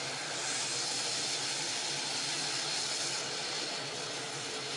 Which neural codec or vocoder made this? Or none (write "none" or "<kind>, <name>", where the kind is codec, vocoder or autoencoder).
none